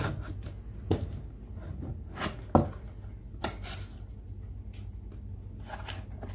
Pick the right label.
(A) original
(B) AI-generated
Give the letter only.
A